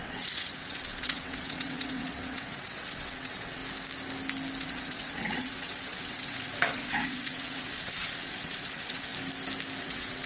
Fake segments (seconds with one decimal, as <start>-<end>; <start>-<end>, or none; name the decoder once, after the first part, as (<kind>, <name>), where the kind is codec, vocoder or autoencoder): 0.0-3.6 (vocoder, WaveNeXt); 4.6-9.1; 9.8-10.3